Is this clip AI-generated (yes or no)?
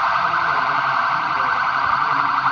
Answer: yes